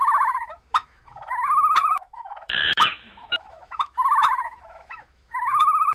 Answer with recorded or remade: remade